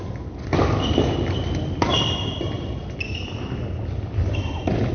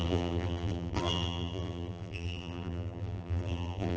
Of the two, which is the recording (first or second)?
first